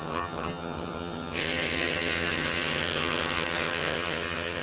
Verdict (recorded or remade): remade